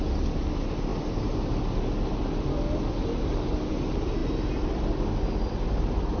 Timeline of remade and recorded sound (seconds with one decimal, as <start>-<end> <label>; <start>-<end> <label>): 0.0-6.2 recorded